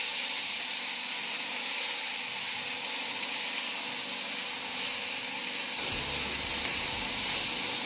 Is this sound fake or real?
real